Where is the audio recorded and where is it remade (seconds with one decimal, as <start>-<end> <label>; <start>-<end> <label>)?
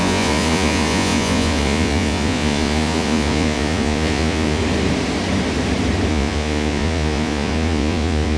0.0-4.6 remade; 4.6-6.1 recorded; 6.1-8.4 remade